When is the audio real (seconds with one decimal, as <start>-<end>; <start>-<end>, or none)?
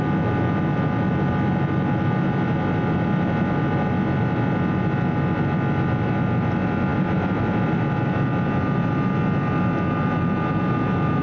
0.0-6.9; 7.5-11.2